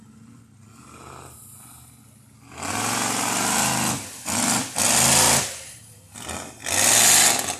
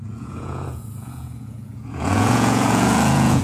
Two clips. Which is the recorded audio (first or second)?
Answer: first